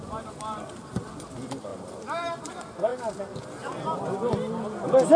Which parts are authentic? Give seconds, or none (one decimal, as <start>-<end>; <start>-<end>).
0.0-5.2